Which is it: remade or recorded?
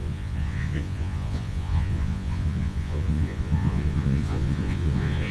remade